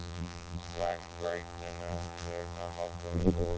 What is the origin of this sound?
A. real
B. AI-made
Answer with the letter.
B